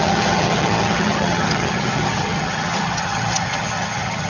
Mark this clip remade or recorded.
remade